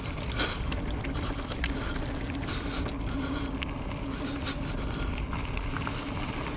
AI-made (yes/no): no